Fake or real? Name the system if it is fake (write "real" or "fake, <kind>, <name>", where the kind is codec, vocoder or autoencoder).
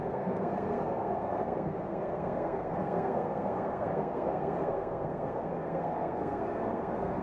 fake, codec, SNAC